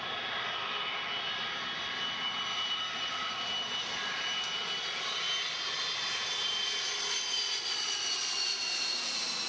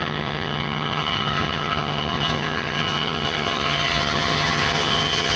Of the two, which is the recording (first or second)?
first